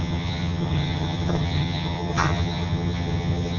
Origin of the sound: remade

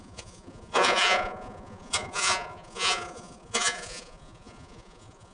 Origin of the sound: remade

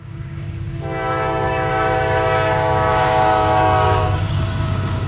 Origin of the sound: remade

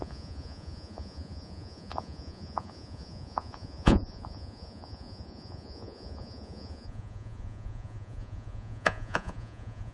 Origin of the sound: remade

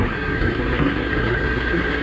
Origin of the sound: remade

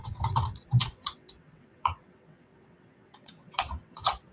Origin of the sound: remade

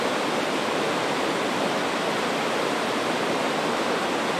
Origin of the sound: recorded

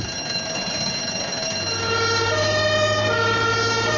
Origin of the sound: recorded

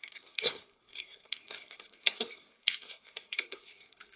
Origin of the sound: remade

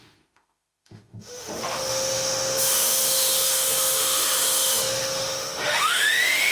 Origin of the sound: remade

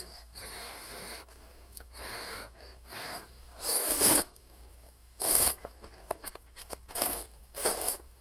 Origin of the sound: remade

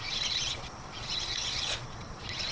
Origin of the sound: remade